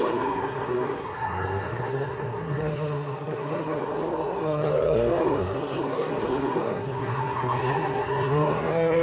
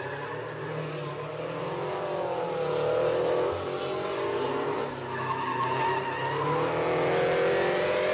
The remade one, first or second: first